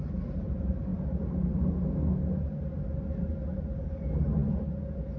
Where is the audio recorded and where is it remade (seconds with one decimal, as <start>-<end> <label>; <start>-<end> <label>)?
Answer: 0.0-5.2 recorded